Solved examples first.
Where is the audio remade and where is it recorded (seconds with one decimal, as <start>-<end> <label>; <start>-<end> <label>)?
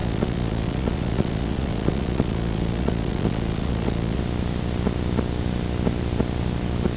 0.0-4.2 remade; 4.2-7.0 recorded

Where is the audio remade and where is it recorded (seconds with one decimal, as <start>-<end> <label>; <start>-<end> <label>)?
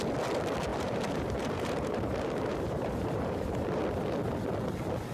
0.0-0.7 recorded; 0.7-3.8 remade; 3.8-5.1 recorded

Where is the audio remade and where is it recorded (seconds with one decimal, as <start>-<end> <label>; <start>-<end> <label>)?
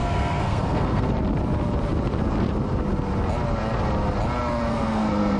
0.0-1.1 remade; 1.1-4.7 recorded; 4.7-5.4 remade